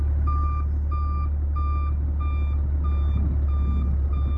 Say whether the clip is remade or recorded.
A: recorded